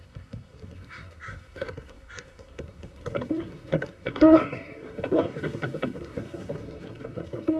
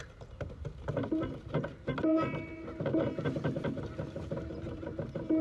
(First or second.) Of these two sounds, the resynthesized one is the first